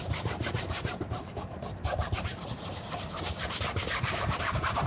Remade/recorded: remade